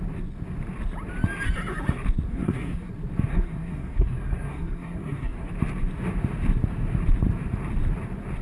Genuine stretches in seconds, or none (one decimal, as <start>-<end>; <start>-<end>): 0.0-2.3; 2.9-3.3; 5.5-8.4